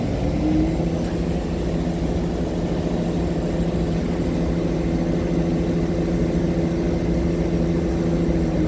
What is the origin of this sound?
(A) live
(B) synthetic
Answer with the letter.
A